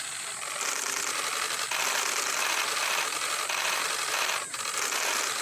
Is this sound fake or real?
real